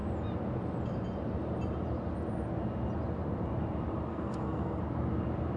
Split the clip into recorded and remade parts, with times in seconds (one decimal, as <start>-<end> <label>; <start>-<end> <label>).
0.0-4.1 recorded; 4.1-4.8 remade; 4.8-5.6 recorded